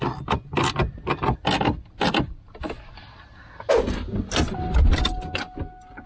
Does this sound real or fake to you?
real